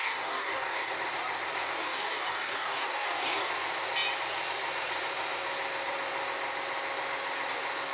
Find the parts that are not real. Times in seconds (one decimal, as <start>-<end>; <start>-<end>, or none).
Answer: 0.0-0.9; 1.8-3.5